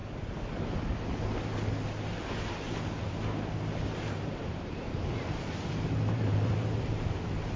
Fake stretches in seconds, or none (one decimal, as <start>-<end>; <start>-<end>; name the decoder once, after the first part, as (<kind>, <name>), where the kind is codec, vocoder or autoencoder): 4.1-7.6 (vocoder, BigVGAN v2)